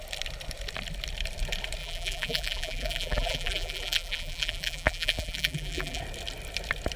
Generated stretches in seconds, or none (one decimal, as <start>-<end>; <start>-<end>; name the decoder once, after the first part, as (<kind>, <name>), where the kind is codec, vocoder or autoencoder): 1.8-6.0 (vocoder, BigVGAN v2)